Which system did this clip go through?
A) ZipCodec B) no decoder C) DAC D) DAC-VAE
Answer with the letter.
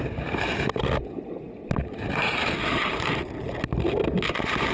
B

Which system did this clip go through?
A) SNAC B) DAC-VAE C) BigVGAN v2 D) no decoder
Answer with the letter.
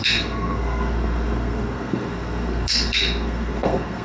A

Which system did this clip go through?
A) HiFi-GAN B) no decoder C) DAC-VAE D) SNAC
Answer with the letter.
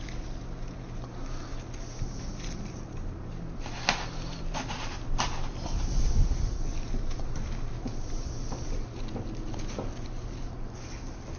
B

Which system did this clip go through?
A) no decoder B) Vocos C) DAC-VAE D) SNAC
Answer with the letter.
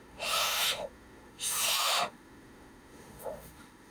C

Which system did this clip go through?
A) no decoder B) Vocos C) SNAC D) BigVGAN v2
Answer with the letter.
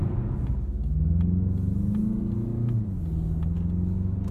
A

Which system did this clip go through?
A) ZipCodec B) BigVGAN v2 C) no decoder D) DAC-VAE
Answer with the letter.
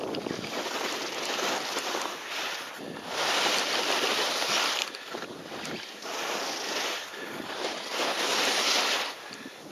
C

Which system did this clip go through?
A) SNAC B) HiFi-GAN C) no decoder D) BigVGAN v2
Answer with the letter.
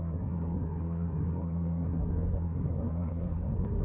A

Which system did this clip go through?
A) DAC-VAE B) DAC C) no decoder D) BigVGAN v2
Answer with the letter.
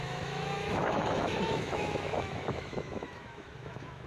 A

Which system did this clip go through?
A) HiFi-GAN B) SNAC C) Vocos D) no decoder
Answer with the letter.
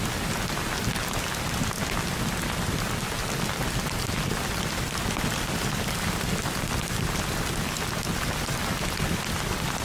D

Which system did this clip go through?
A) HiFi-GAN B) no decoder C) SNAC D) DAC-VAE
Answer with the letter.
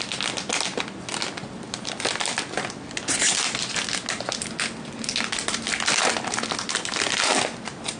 B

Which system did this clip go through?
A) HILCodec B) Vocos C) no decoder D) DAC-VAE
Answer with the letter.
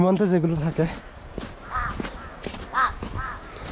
C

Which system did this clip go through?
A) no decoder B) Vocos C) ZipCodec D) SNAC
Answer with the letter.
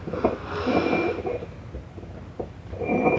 A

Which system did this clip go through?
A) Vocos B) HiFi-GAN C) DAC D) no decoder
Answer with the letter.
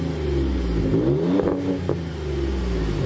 D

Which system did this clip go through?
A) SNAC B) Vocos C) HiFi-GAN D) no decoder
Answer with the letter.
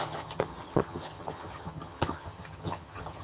C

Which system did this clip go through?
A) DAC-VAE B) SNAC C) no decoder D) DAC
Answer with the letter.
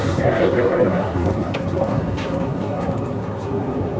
B